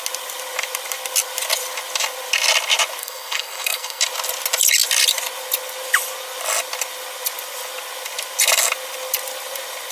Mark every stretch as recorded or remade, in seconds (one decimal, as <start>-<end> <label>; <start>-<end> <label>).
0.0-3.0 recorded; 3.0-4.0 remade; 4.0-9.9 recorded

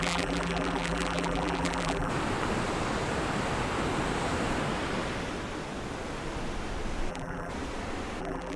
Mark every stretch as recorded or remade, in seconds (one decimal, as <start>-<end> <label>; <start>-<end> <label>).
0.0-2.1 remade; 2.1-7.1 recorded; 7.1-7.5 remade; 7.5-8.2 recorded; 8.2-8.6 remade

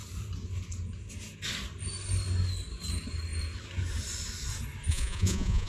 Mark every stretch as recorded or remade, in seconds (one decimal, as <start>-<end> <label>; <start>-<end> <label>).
0.0-4.9 recorded; 4.9-5.7 remade

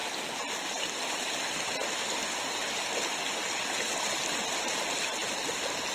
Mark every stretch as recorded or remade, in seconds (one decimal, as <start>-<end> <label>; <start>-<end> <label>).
0.0-5.9 recorded

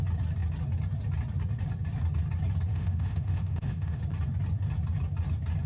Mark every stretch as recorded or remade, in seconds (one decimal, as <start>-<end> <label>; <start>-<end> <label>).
0.0-2.7 recorded; 2.7-4.0 remade; 4.0-5.7 recorded

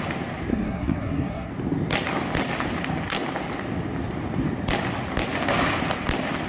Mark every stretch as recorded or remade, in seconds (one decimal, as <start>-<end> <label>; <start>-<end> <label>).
0.0-0.5 recorded; 0.5-1.5 remade; 1.5-6.5 recorded